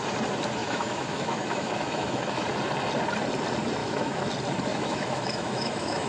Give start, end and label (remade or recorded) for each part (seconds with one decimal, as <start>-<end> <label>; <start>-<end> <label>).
0.0-0.6 recorded; 0.6-2.5 remade; 2.5-3.8 recorded; 3.8-4.3 remade; 4.3-4.7 recorded; 4.7-6.1 remade